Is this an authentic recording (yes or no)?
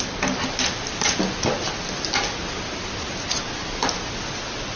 yes